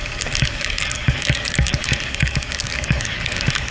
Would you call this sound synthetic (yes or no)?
yes